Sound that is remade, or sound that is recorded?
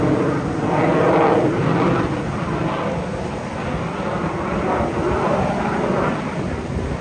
recorded